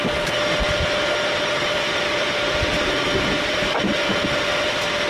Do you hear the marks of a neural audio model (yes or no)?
no